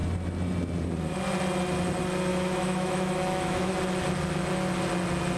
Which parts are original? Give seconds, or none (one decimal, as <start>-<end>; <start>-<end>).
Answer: 0.0-2.3; 3.7-5.4